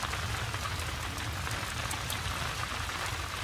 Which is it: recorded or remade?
recorded